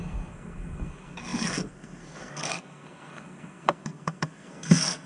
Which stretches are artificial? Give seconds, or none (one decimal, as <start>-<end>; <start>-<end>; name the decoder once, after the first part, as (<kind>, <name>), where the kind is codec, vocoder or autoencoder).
0.0-5.1 (codec, SNAC)